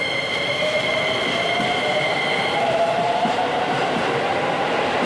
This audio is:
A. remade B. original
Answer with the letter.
A